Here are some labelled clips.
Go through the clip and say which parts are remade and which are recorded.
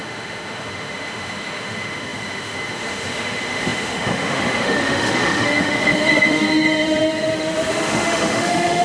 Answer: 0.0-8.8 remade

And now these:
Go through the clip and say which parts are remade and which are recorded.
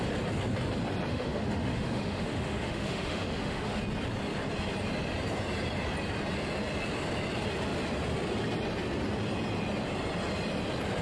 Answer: 0.0-1.1 recorded; 1.1-3.8 remade; 3.8-11.0 recorded